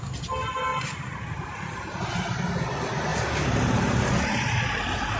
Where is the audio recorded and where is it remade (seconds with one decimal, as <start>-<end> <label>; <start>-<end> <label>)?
0.0-5.2 recorded